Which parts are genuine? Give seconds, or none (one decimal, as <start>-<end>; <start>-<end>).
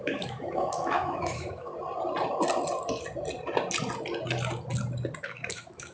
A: 1.7-5.2